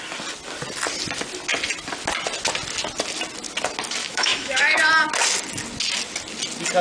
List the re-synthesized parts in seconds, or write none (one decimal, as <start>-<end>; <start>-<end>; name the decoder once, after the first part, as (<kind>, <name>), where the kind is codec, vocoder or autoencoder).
4.0-4.9 (autoencoder, DAC-VAE)